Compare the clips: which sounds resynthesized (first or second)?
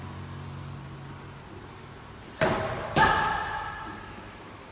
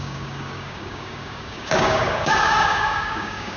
second